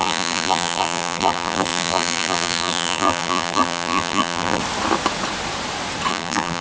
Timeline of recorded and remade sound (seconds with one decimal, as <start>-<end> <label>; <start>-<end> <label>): 0.0-4.6 remade; 4.6-6.1 recorded; 6.1-6.6 remade

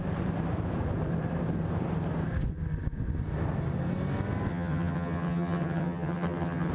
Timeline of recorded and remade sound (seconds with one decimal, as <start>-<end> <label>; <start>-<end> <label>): 0.0-4.5 recorded; 4.5-6.7 remade

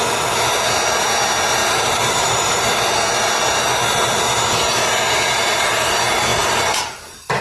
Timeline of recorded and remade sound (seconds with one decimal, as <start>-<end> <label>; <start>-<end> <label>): 0.0-1.6 recorded; 1.6-2.7 remade; 2.7-6.3 recorded; 6.3-6.8 remade; 6.8-7.4 recorded

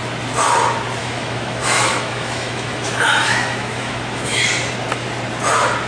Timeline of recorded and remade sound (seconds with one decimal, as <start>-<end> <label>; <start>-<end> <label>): 0.0-1.0 recorded; 1.0-4.5 remade; 4.5-5.9 recorded